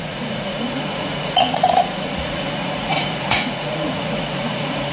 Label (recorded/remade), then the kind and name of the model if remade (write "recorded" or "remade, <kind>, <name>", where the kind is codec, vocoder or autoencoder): remade, vocoder, Vocos